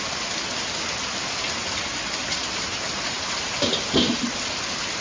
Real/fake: real